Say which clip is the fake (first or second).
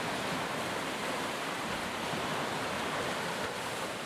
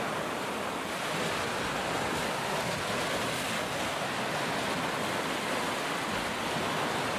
first